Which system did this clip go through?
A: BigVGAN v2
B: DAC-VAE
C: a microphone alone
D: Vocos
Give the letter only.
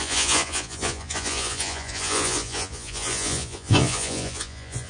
D